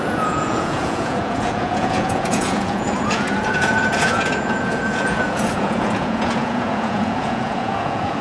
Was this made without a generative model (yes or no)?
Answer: no